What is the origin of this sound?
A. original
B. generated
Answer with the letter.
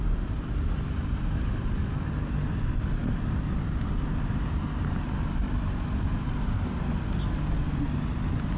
A